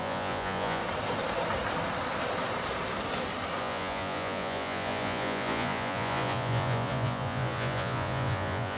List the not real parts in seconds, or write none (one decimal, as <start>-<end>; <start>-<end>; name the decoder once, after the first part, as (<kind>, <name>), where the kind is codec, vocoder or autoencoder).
0.0-0.8 (vocoder, Vocos); 3.6-8.8